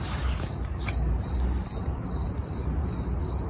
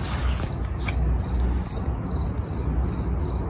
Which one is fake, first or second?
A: first